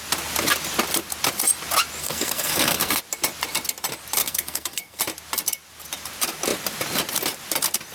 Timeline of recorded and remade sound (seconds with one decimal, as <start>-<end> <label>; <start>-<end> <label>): 0.0-2.0 recorded; 2.0-3.0 remade; 3.0-4.2 recorded; 4.2-5.0 remade; 5.0-7.9 recorded